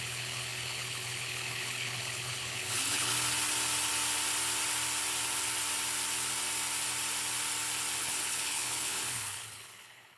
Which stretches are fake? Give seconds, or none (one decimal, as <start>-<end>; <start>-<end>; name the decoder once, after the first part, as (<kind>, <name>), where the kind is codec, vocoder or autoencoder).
0.0-3.1 (codec, HILCodec); 8.0-10.2